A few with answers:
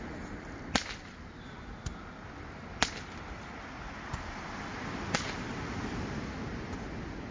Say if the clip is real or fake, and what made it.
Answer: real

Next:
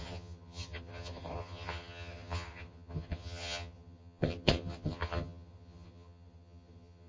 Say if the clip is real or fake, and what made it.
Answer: fake, vocoder, HiFi-GAN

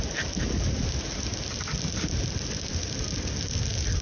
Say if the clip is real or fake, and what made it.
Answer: real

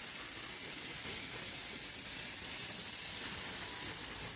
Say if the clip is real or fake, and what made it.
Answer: real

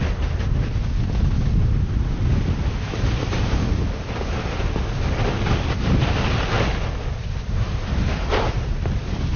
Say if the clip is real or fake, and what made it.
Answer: real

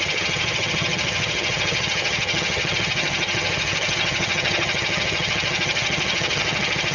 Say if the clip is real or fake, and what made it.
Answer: fake, vocoder, HiFi-GAN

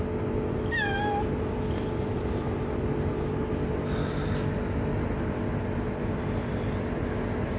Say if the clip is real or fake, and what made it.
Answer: real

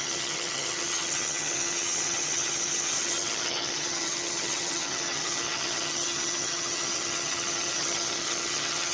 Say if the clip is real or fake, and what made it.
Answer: fake, vocoder, HiFi-GAN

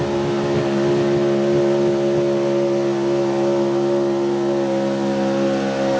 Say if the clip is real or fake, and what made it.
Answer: real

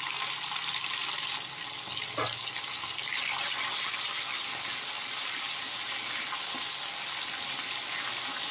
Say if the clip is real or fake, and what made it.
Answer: real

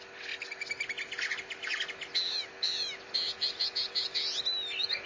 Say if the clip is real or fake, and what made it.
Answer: real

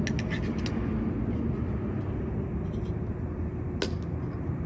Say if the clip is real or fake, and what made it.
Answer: real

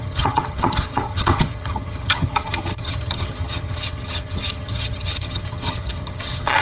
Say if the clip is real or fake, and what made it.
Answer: fake, vocoder, HiFi-GAN